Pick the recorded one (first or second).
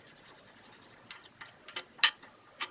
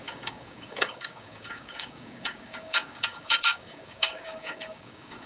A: first